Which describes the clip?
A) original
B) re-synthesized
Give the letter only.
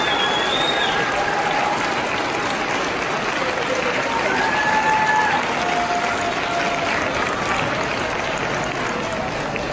A